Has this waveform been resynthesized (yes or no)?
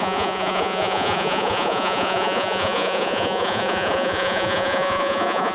yes